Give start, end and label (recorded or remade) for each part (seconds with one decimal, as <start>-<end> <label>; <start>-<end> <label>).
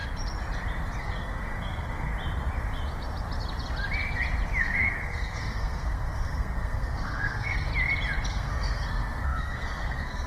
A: 0.0-1.0 recorded; 1.0-2.1 remade; 2.1-4.6 recorded; 4.6-7.7 remade; 7.7-8.3 recorded; 8.3-10.3 remade